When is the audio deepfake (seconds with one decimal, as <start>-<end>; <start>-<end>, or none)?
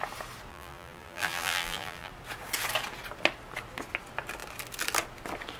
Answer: 0.5-2.1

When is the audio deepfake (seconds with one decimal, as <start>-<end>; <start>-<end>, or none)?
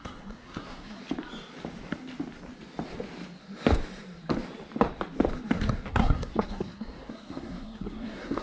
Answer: 0.0-1.0; 5.9-8.4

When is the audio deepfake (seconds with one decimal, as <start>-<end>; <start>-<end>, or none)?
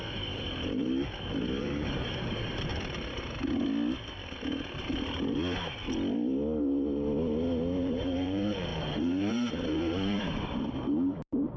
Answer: 0.0-0.8; 1.6-2.7; 7.8-11.6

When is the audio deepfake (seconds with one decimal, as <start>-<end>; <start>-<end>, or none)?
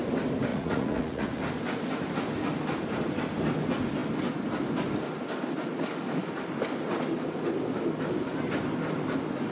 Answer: 0.5-1.4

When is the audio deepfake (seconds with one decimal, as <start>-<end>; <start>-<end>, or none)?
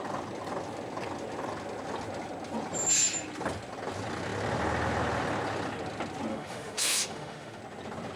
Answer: 6.3-7.6